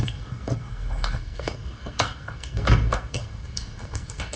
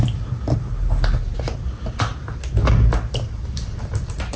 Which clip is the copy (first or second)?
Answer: first